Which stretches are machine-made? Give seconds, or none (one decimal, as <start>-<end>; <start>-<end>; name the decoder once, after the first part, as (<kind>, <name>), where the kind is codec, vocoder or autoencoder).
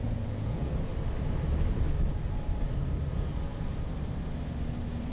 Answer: 0.0-0.9 (vocoder, Vocos); 3.1-3.5